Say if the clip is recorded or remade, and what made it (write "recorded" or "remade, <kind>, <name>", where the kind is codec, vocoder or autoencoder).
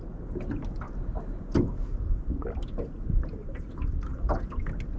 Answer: recorded